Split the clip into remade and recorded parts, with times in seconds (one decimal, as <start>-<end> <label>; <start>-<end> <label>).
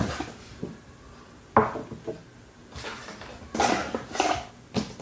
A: 0.0-5.0 recorded